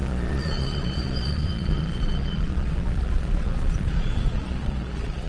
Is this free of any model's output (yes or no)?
no